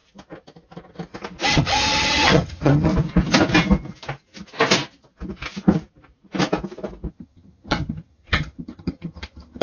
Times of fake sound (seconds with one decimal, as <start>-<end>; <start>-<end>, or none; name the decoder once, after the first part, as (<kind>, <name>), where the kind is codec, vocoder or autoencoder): 1.5-2.9 (vocoder, HiFi-GAN); 7.1-9.6